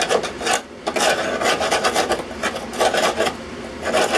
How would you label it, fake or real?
real